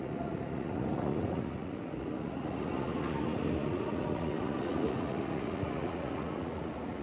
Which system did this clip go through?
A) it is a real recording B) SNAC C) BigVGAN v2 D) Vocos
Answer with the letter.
D